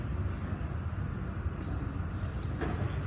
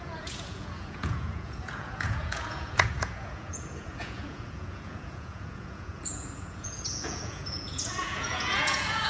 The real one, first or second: first